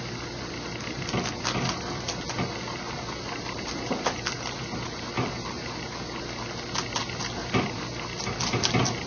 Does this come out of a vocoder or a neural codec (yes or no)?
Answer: no